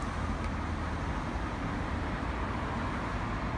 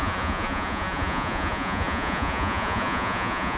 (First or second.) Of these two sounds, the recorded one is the first